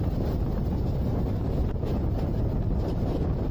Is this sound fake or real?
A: real